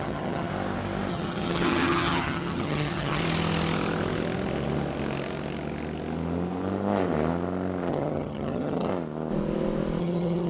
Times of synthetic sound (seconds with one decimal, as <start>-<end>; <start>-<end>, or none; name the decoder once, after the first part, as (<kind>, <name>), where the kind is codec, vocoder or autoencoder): 0.0-0.5 (vocoder, HiFi-GAN); 1.1-3.2; 7.9-8.9; 10.0-10.5